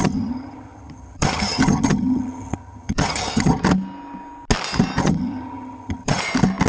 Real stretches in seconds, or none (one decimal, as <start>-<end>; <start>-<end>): 3.6-5.0; 6.2-6.7